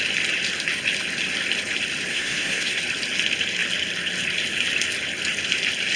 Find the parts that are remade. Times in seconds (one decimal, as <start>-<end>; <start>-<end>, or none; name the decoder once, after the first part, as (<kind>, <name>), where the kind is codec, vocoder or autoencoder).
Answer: 2.1-2.8 (codec, SNAC)